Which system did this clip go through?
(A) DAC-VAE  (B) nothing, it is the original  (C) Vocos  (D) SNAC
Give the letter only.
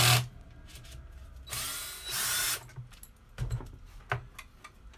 B